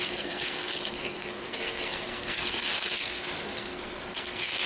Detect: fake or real fake